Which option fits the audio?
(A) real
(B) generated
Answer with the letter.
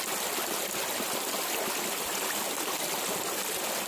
A